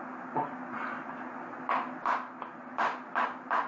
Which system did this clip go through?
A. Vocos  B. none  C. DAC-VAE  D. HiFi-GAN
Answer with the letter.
B